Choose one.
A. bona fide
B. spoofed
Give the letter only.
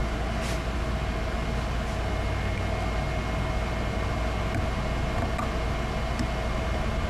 A